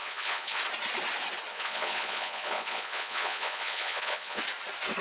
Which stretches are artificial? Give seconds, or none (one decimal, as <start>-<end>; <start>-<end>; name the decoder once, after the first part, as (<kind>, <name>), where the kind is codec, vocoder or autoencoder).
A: 0.0-0.6 (vocoder, Vocos); 1.5-4.4